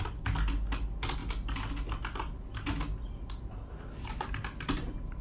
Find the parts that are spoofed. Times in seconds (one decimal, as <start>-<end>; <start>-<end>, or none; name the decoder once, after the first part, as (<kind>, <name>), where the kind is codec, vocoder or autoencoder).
none